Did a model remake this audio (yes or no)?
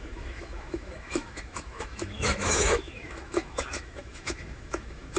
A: yes